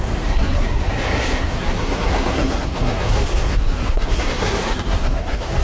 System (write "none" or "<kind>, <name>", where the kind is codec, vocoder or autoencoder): codec, SNAC